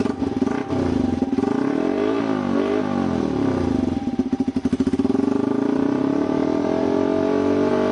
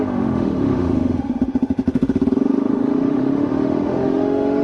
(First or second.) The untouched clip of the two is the first